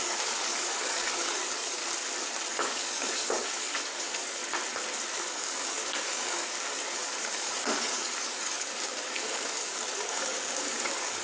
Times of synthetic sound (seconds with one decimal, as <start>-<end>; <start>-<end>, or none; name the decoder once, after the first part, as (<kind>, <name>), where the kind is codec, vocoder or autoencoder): 0.0-1.8 (codec, DAC); 2.5-4.4; 5.1-11.2